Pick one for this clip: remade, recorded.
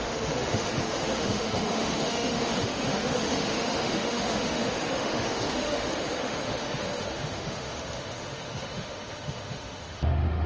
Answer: remade